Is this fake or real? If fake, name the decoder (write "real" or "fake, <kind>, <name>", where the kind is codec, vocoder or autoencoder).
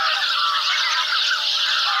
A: real